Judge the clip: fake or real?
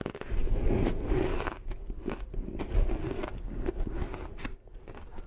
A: real